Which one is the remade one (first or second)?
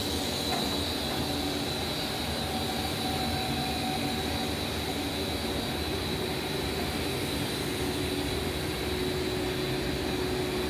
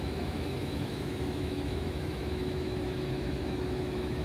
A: second